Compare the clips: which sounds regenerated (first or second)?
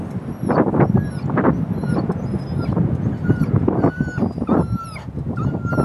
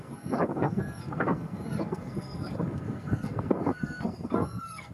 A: second